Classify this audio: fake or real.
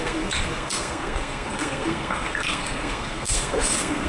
fake